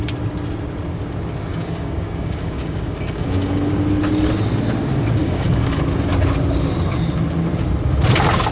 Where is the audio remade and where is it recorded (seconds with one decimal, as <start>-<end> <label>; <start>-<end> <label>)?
0.0-1.5 recorded; 1.5-3.7 remade; 3.7-5.2 recorded; 5.2-5.8 remade; 5.8-8.5 recorded